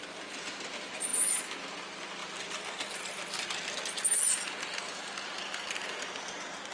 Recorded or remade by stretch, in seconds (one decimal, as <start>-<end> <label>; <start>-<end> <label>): 0.0-6.7 recorded